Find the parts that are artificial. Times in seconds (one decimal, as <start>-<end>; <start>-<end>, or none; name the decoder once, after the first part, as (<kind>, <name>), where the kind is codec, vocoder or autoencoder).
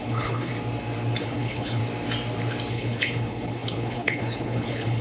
0.0-0.5 (codec, HILCodec); 1.2-1.8; 2.7-5.0